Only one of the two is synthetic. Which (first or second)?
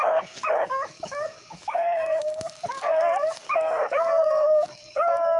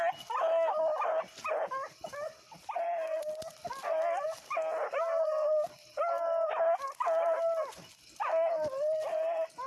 first